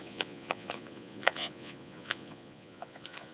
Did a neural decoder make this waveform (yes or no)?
yes